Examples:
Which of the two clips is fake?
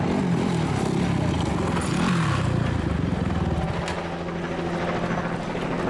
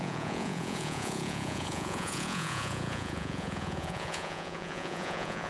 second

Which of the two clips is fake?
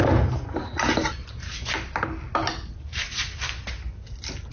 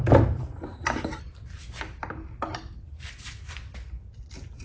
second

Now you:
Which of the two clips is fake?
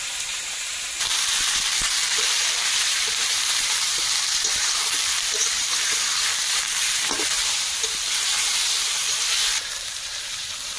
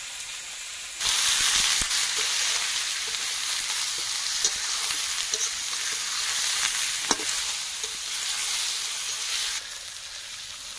first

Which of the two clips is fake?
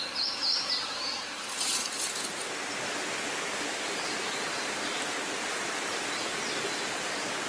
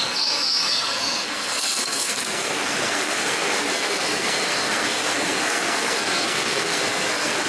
second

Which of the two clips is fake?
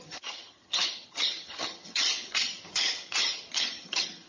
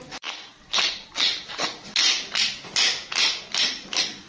first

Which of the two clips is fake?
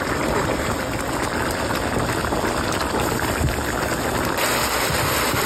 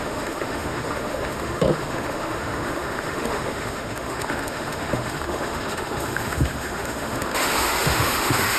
second